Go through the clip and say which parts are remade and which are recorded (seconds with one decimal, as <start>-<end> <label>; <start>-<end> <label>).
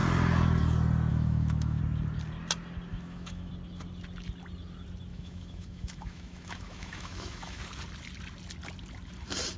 0.0-1.1 recorded; 1.1-1.8 remade; 1.8-2.9 recorded; 2.9-3.5 remade; 3.5-5.1 recorded; 5.1-7.6 remade; 7.6-9.6 recorded